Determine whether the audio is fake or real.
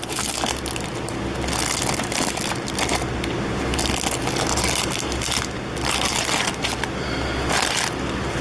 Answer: real